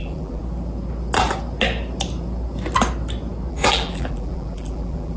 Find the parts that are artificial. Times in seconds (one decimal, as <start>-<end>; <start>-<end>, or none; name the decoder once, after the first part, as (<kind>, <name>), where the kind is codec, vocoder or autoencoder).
0.0-0.4 (vocoder, BigVGAN v2); 3.5-5.2